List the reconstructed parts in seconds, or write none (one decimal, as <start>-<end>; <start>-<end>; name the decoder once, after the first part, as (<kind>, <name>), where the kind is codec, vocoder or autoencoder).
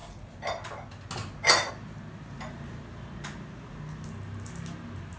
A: none